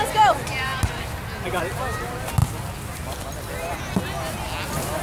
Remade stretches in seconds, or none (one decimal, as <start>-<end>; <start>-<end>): none